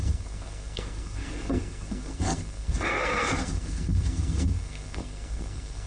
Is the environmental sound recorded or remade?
remade